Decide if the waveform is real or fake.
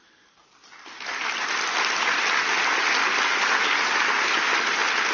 real